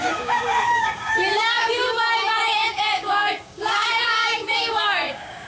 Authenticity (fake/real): fake